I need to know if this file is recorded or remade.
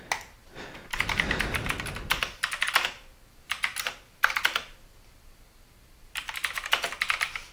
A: recorded